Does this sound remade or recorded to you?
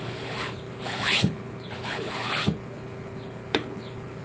remade